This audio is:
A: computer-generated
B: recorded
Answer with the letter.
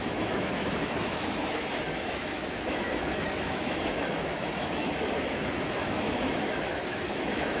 A